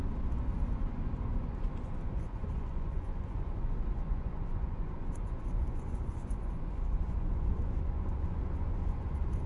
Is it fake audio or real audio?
fake